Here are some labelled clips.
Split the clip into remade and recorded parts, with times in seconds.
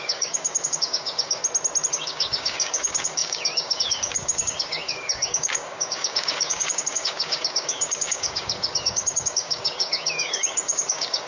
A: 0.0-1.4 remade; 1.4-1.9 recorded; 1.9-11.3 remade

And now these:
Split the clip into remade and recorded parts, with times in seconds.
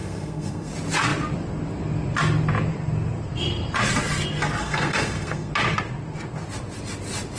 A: 0.0-0.7 remade; 0.7-4.6 recorded; 4.6-5.5 remade; 5.5-7.4 recorded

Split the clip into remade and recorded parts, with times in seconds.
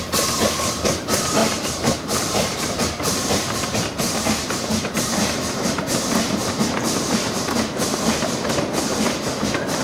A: 0.0-1.4 recorded; 1.4-5.1 remade; 5.1-6.4 recorded; 6.4-8.8 remade; 8.8-9.8 recorded